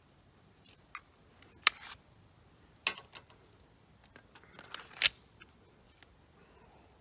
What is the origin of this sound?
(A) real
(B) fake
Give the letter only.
A